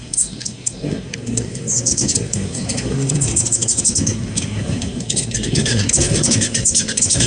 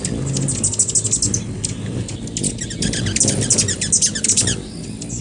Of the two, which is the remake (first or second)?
first